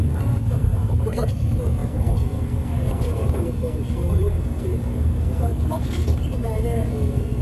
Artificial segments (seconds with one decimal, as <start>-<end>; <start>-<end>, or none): 0.0-7.4